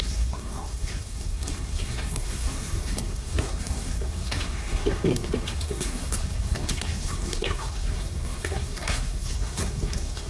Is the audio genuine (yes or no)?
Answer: no